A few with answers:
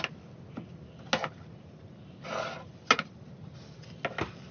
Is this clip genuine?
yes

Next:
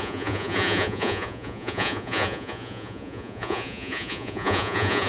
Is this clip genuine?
no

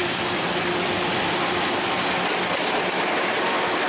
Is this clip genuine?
yes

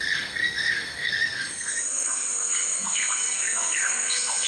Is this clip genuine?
no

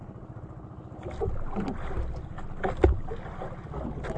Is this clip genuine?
yes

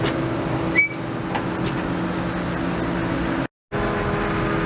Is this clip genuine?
yes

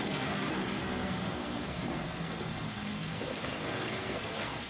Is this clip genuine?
no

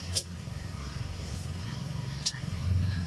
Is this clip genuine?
no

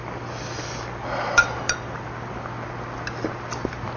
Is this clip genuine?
yes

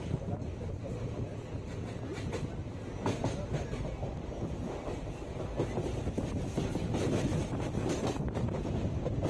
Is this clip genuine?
yes